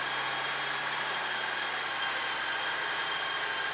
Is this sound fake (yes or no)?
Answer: no